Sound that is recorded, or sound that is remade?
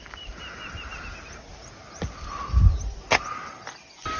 recorded